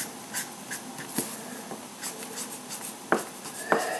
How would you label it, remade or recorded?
recorded